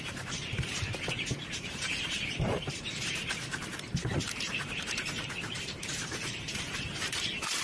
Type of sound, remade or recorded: remade